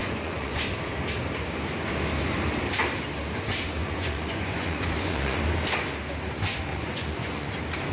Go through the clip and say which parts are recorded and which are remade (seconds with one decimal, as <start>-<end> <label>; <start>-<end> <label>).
0.0-0.6 remade; 0.6-3.8 recorded; 3.8-5.4 remade; 5.4-6.7 recorded; 6.7-7.5 remade; 7.5-7.9 recorded